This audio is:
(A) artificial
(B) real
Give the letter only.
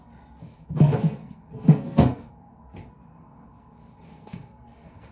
A